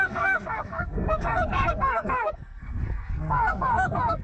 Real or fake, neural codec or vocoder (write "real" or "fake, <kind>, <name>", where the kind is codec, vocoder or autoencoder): fake, codec, SNAC